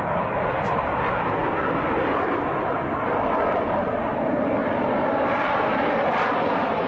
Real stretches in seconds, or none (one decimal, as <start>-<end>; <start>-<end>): 0.0-6.9